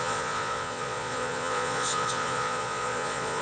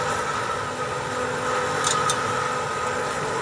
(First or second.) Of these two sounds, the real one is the second